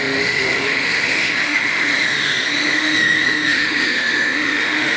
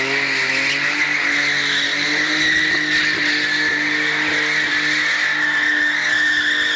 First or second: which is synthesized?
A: first